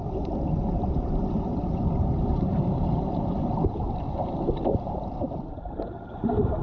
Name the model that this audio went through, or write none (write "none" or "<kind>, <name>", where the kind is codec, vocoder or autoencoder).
vocoder, BigVGAN v2